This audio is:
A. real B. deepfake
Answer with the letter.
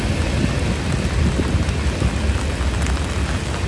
A